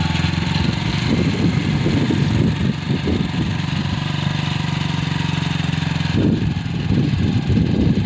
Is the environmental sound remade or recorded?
recorded